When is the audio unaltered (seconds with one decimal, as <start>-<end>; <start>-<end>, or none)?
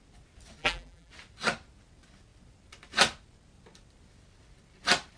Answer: 0.0-0.6; 1.1-5.2